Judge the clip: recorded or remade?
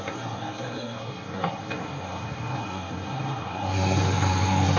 remade